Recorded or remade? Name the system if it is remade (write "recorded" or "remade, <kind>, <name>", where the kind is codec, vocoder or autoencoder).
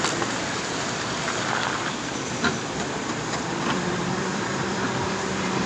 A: remade, vocoder, BigVGAN v2